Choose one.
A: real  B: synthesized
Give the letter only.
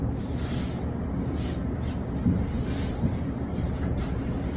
B